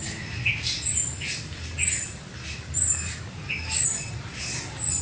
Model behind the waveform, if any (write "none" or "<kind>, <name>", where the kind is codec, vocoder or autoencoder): none